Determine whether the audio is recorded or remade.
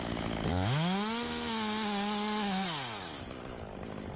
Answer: recorded